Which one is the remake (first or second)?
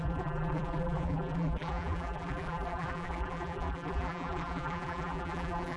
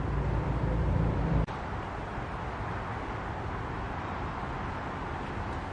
first